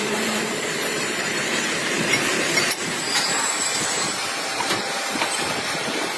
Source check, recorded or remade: remade